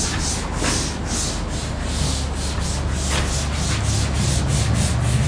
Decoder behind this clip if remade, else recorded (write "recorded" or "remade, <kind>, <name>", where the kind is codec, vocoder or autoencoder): recorded